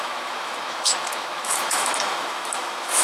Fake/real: fake